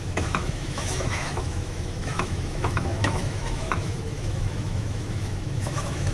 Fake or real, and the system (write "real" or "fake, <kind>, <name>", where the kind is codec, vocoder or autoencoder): fake, autoencoder, DAC-VAE